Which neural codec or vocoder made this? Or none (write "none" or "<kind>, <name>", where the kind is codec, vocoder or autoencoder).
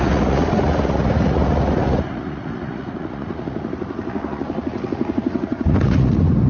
vocoder, Vocos